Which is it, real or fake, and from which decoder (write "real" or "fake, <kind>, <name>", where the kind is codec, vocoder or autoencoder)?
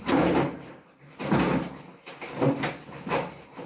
real